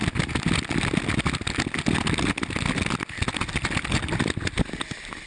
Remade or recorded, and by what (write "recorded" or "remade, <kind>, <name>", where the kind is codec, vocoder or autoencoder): recorded